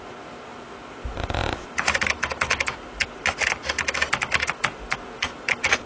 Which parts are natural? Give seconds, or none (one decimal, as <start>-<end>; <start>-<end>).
0.0-5.9